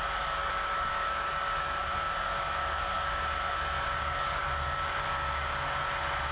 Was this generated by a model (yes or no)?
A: no